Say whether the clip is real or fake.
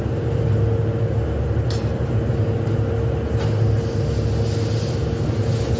real